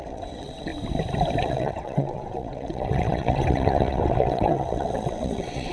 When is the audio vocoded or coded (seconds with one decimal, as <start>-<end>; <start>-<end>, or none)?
0.0-0.7; 1.4-5.7